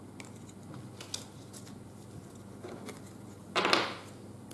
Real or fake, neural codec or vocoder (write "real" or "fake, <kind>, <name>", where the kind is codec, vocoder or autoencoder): real